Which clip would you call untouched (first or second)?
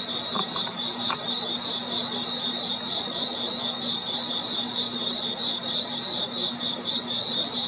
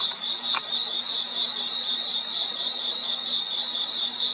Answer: second